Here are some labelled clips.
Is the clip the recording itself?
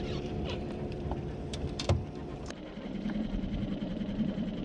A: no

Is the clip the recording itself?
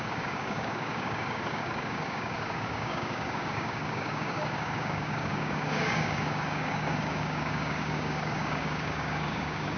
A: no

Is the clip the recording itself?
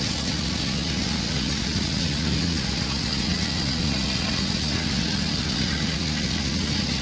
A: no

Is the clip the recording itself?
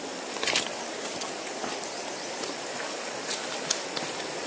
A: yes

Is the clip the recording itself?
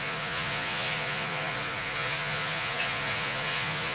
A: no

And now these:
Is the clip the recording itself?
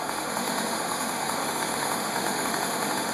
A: no